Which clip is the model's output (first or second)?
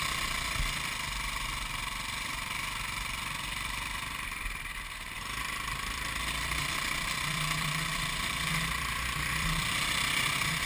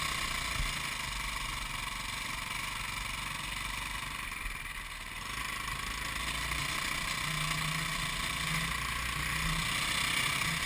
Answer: first